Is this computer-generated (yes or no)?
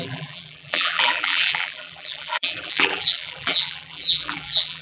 yes